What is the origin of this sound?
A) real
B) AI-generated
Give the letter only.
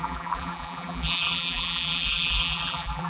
B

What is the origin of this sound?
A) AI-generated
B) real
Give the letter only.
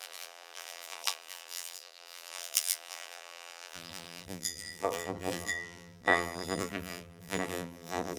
A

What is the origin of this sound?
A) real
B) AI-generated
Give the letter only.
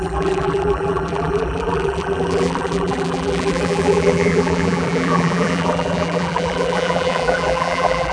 B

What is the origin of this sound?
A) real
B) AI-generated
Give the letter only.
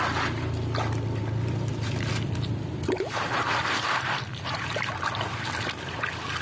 A